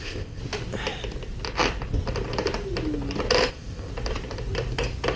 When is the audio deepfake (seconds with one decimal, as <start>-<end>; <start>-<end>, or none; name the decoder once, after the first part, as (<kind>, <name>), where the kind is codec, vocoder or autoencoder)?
0.0-0.4 (codec, ZipCodec); 3.5-3.9